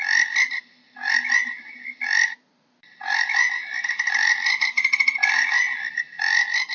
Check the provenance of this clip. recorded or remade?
recorded